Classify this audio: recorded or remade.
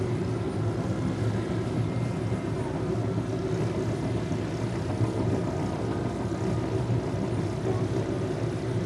recorded